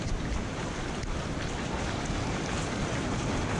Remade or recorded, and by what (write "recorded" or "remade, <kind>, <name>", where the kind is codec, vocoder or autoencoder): recorded